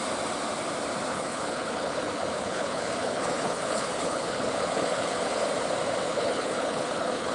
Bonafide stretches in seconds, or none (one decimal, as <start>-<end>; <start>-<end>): 0.0-1.1; 5.5-6.1